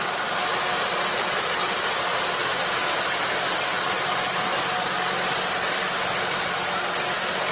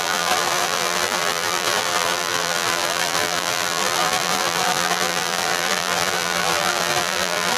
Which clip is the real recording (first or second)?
first